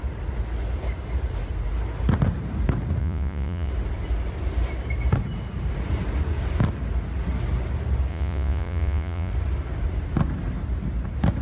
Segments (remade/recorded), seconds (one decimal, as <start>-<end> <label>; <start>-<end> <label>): 0.0-3.0 recorded; 3.0-3.7 remade; 3.7-8.1 recorded; 8.1-9.3 remade; 9.3-11.4 recorded